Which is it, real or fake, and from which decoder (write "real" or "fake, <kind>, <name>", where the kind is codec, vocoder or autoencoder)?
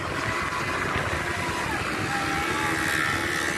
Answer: real